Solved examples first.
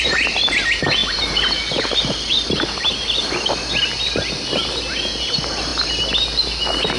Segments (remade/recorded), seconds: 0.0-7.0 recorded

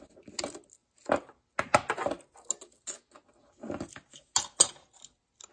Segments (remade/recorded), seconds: 0.0-5.5 recorded